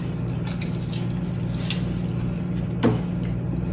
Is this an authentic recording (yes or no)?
yes